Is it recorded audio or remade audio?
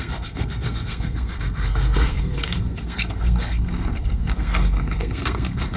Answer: remade